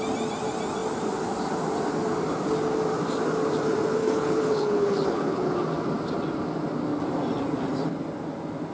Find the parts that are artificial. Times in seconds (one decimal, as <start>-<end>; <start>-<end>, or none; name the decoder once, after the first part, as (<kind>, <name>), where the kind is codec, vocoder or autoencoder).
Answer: 4.0-5.5 (codec, HILCodec)